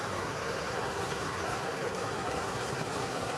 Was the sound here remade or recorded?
remade